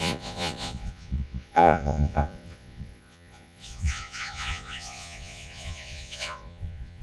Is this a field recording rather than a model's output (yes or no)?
no